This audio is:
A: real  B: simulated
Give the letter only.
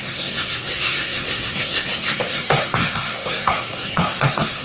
B